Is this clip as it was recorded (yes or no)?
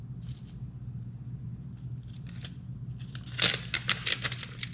yes